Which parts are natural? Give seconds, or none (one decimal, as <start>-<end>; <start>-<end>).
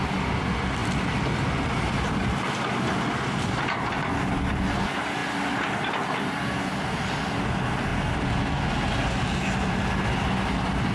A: 0.0-10.9